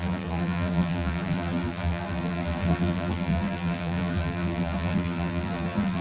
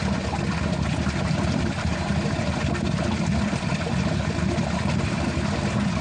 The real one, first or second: second